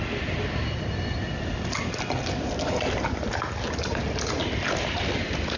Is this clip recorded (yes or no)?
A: yes